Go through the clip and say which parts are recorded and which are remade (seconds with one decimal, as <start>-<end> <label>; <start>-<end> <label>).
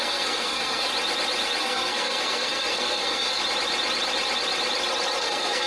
0.0-0.9 remade; 0.9-1.6 recorded; 1.6-3.4 remade; 3.4-5.2 recorded; 5.2-5.7 remade